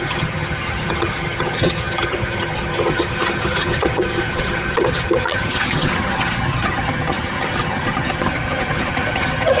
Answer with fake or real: fake